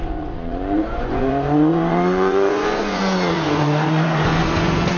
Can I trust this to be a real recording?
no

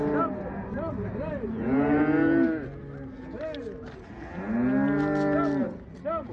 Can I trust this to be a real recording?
yes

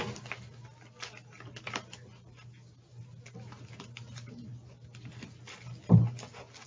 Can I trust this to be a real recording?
yes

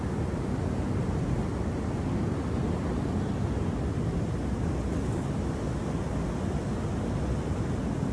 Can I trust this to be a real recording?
yes